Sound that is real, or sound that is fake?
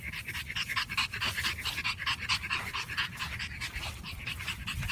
real